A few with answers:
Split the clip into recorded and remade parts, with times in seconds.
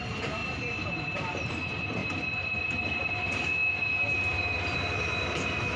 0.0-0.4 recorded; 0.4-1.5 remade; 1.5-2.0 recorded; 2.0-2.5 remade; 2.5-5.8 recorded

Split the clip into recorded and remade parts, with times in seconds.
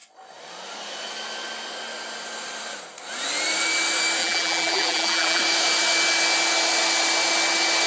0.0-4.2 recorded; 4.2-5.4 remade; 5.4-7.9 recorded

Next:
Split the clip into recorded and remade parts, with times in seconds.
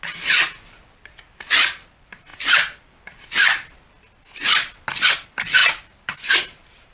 0.0-5.6 recorded; 5.6-6.9 remade